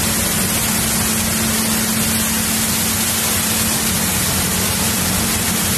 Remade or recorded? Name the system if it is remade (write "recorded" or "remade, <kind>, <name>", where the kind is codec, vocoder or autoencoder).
recorded